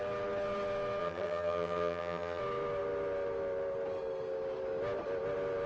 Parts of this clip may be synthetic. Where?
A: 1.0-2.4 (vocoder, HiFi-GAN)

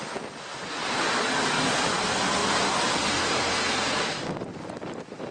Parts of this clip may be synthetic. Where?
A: 0.5-1.1 (vocoder, BigVGAN v2); 2.4-3.2

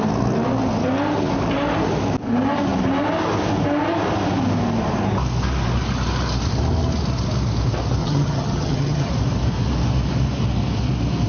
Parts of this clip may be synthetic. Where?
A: 8.0-9.1 (vocoder, HiFi-GAN)

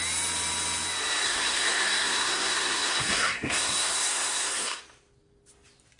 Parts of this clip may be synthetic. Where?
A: 1.2-4.8 (codec, SNAC)